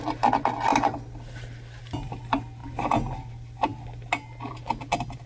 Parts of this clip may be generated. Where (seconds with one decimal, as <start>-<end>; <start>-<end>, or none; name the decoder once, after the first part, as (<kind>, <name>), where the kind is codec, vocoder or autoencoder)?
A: none